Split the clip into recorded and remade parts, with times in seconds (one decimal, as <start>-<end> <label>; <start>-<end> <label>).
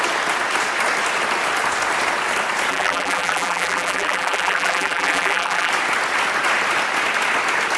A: 0.0-2.7 recorded; 2.7-5.7 remade; 5.7-7.8 recorded